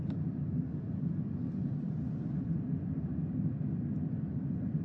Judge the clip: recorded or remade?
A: remade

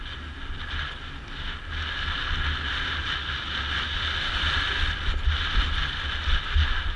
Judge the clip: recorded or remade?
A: recorded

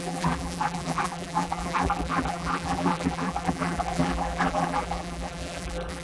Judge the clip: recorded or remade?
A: remade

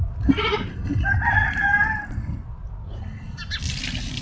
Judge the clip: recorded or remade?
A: recorded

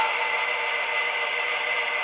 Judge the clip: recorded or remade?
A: remade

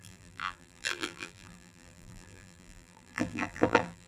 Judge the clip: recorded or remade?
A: remade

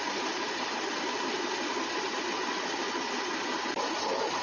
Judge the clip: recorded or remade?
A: remade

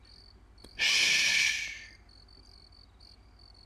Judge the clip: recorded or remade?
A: recorded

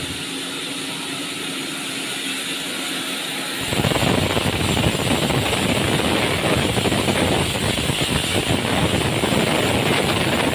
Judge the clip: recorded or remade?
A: recorded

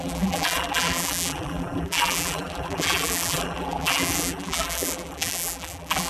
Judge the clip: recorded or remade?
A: remade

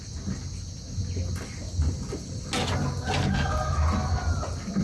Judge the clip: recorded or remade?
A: recorded